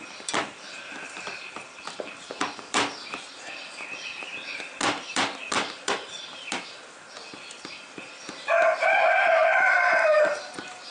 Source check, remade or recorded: remade